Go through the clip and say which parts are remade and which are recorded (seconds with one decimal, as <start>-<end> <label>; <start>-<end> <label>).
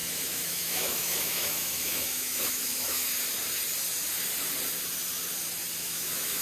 0.0-3.0 remade; 3.0-5.8 recorded; 5.8-6.4 remade